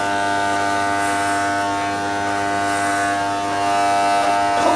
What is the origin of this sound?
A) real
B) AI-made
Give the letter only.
A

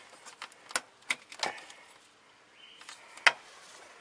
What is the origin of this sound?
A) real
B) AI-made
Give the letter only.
A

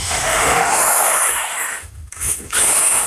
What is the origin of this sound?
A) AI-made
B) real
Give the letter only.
A